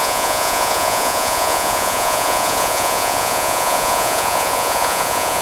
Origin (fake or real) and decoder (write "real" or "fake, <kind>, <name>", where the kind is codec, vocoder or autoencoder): fake, vocoder, Vocos